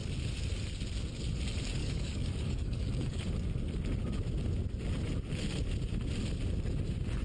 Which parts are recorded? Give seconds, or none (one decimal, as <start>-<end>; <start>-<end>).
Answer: 0.0-1.8; 3.2-7.2